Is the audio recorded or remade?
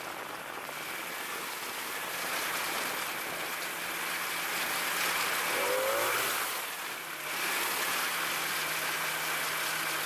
recorded